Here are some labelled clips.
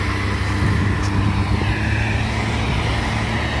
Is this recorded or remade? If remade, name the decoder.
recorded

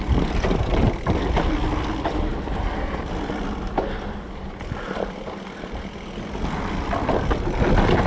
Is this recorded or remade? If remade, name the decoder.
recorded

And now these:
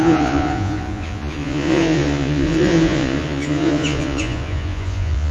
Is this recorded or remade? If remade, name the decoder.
remade, vocoder, Vocos